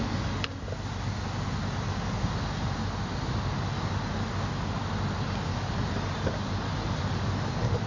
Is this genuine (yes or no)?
yes